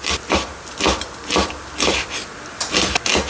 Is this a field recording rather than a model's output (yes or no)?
yes